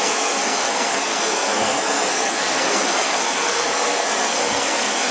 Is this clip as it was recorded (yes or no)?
no